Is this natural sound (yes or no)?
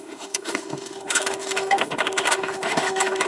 no